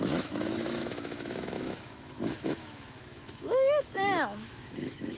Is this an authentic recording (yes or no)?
no